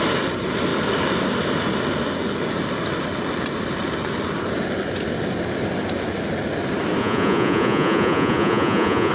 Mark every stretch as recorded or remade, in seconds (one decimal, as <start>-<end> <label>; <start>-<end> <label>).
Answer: 0.0-7.0 recorded; 7.0-9.1 remade